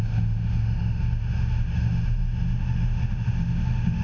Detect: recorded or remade remade